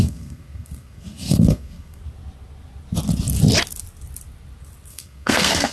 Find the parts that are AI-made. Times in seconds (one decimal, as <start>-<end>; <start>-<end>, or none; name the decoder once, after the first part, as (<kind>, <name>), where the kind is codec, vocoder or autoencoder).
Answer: 0.0-2.0 (codec, SNAC); 4.9-5.7